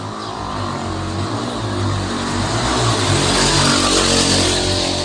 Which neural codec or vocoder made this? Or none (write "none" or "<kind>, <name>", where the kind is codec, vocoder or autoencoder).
none